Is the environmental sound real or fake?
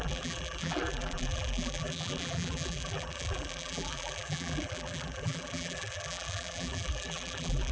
fake